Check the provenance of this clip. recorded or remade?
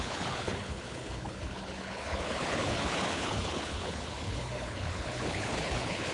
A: remade